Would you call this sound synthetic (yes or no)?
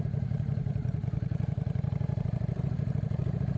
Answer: yes